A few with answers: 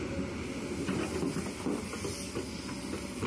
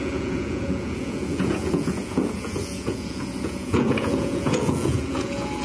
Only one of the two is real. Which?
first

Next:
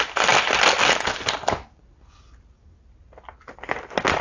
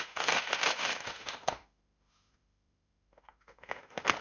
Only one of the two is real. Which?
first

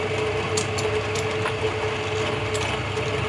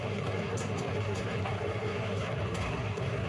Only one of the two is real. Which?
first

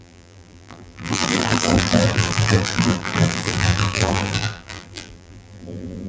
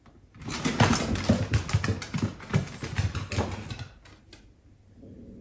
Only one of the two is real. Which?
second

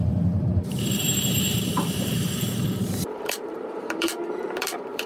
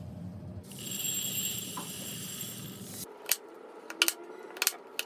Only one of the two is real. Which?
second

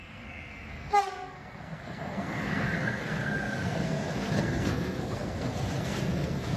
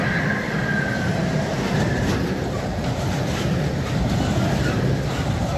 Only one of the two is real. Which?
second